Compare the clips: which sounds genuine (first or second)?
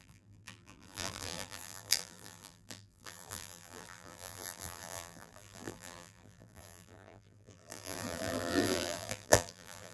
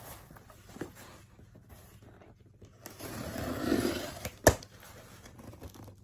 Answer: second